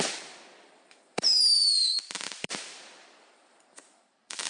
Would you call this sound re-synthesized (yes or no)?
yes